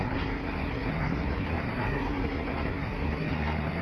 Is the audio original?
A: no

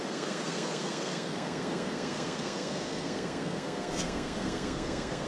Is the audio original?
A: no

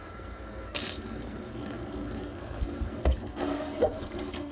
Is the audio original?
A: no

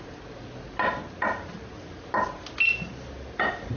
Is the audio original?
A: yes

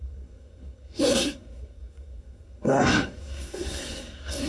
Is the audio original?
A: no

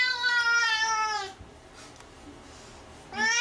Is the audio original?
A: yes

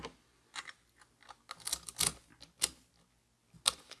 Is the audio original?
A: yes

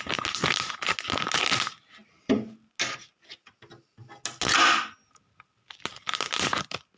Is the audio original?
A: yes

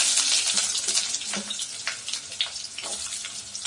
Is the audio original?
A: yes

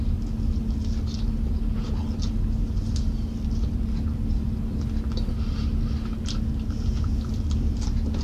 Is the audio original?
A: yes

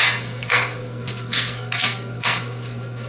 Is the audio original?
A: no